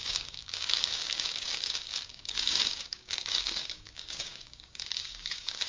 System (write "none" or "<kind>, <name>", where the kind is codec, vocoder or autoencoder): codec, DAC